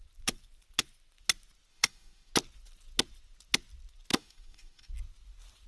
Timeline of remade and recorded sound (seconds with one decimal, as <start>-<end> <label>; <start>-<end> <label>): 0.0-1.7 recorded; 1.7-2.3 remade; 2.3-4.1 recorded; 4.1-4.9 remade; 4.9-5.7 recorded